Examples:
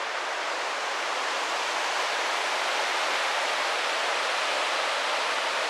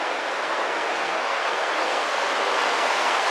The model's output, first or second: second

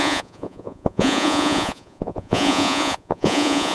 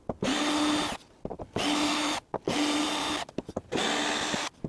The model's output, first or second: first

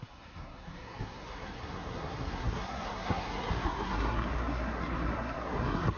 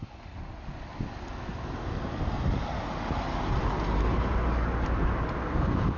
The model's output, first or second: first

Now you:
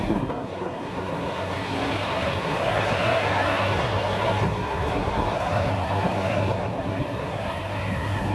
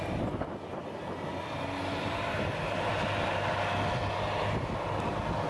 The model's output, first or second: first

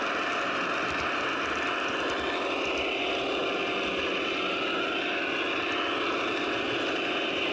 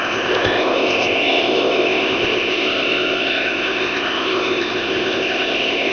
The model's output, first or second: second